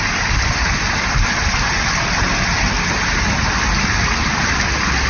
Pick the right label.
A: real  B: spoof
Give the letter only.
A